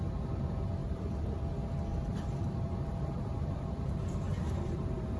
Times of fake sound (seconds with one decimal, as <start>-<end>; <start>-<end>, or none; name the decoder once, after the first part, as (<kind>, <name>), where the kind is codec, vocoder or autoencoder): 0.8-1.4 (vocoder, BigVGAN v2); 1.9-5.2